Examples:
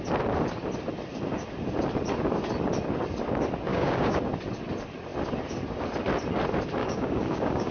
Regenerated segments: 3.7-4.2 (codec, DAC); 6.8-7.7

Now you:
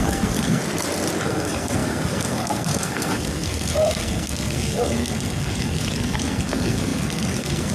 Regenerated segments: 0.0-0.6 (codec, SNAC); 1.2-7.7

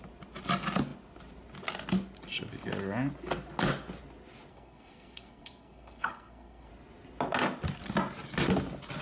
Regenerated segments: 4.5-6.7 (codec, SNAC)

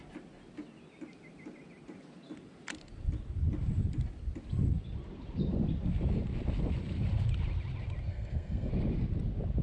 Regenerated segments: 8.1-8.7 (codec, SNAC)

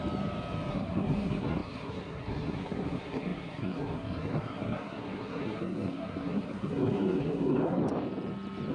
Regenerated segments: 0.7-7.8 (codec, SNAC)